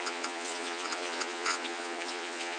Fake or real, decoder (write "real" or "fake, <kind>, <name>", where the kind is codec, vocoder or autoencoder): fake, vocoder, Vocos